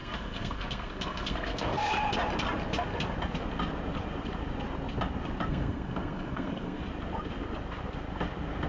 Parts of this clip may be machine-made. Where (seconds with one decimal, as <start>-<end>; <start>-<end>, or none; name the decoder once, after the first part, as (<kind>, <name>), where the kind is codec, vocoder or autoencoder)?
0.0-1.9 (codec, SNAC); 5.5-6.8